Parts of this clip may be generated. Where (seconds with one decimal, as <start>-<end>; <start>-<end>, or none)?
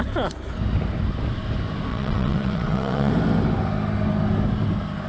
1.9-3.1